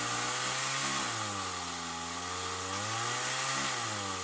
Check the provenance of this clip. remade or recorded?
recorded